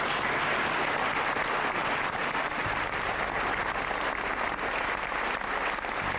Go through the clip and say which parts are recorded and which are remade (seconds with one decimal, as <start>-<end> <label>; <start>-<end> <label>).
0.0-2.2 recorded; 2.2-3.2 remade; 3.2-6.2 recorded